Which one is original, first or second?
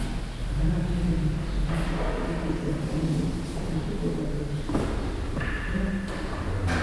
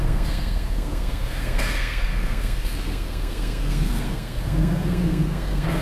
first